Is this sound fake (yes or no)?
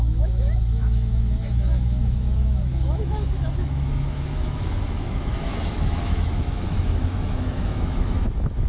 yes